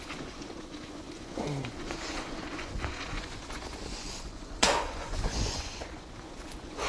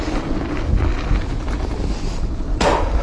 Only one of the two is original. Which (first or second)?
second